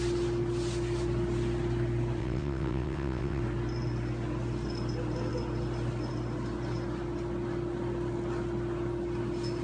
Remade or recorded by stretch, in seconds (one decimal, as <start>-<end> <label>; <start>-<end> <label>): 0.0-2.2 recorded; 2.2-3.4 remade; 3.4-9.6 recorded